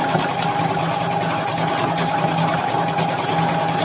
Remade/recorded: recorded